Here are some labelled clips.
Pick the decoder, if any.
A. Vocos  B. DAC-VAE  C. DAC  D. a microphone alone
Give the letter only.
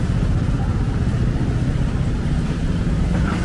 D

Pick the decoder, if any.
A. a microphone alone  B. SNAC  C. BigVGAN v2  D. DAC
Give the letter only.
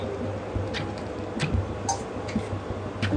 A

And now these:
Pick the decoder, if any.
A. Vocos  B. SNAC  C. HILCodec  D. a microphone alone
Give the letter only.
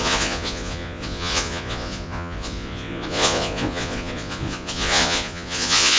A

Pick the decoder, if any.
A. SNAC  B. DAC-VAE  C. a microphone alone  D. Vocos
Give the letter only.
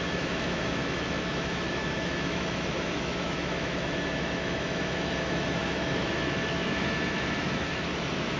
B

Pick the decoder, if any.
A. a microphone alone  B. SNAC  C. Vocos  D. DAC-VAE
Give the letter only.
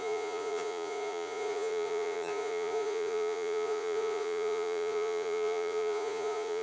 C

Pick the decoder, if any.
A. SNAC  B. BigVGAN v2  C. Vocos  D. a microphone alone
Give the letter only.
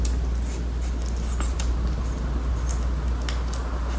D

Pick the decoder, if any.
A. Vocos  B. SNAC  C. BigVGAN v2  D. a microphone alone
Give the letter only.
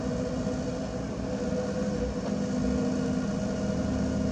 D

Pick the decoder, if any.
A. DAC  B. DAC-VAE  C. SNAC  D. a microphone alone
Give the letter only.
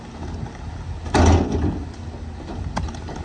D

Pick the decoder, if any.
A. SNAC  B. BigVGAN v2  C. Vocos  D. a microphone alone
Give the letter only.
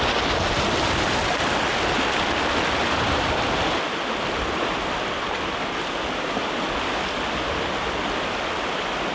D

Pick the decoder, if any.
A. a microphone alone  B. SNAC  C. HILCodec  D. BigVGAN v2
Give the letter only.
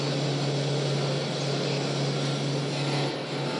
A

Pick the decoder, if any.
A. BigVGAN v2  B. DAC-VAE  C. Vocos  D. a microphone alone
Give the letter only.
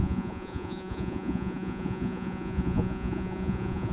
C